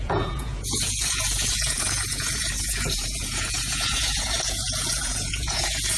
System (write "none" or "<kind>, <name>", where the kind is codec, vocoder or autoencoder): vocoder, Vocos